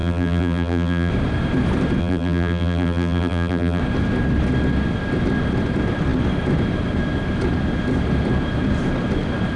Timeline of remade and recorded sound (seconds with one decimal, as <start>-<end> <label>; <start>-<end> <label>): 0.0-1.1 remade; 1.1-2.0 recorded; 2.0-3.8 remade; 3.8-9.6 recorded